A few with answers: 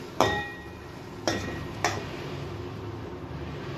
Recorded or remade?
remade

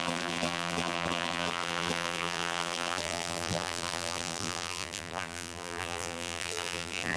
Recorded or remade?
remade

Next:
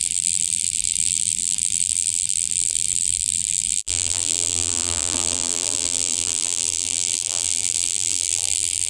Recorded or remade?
remade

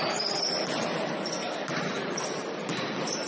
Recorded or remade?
recorded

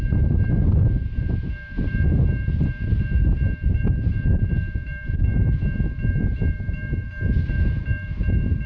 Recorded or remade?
remade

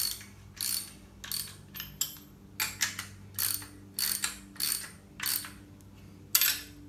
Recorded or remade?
recorded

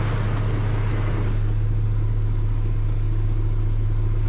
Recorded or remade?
recorded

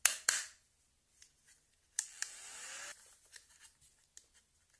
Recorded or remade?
recorded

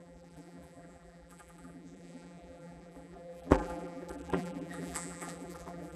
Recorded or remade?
remade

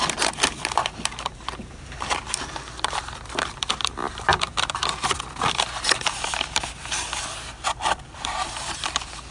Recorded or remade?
remade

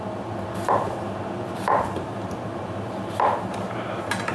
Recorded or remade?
remade